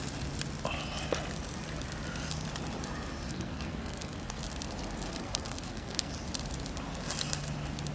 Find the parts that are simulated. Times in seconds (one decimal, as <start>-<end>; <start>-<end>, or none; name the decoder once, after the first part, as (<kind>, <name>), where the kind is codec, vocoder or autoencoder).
3.3-4.4 (codec, SNAC); 5.1-6.1

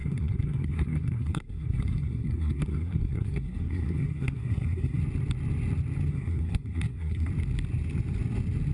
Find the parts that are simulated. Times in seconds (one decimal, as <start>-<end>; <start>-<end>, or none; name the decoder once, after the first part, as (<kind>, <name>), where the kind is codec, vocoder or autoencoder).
0.0-5.0 (codec, SNAC); 6.1-7.3